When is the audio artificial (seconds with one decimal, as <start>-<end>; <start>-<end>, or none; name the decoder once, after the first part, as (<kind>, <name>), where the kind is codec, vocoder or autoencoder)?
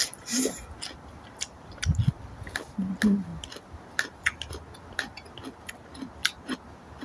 none